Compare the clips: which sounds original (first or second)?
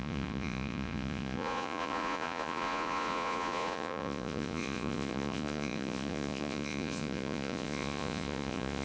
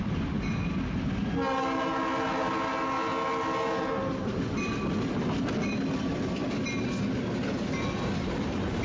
second